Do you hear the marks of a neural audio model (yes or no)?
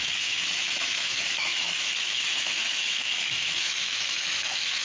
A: yes